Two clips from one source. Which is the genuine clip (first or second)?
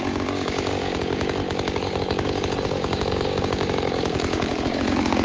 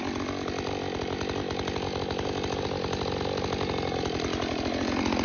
second